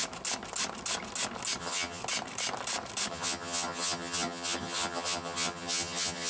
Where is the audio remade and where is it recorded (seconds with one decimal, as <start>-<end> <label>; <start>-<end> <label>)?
0.0-1.6 recorded; 1.6-2.0 remade; 2.0-3.1 recorded; 3.1-6.3 remade